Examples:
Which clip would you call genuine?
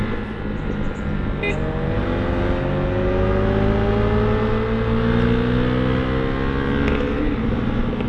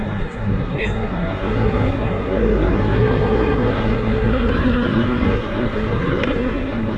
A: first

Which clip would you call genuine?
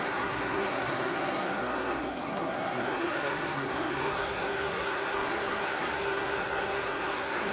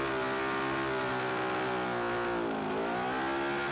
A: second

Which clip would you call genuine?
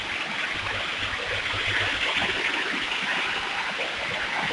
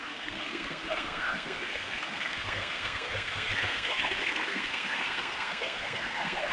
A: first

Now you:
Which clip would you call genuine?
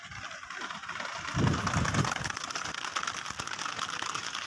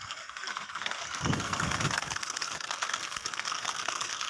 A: first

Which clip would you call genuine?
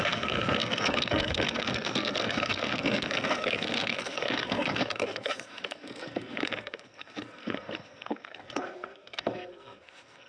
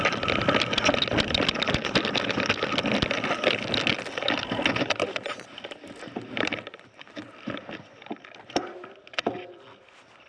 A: second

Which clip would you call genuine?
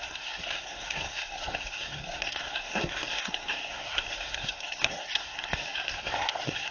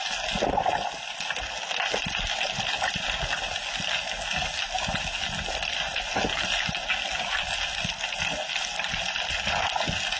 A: second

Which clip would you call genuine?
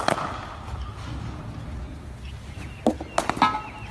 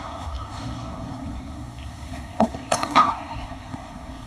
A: first